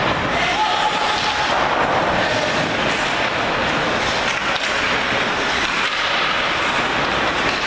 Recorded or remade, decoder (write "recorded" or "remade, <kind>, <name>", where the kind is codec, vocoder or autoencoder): recorded